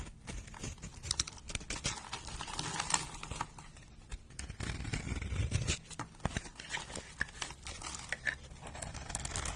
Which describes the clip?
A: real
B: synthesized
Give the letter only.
A